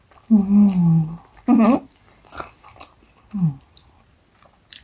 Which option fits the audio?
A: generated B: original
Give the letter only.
B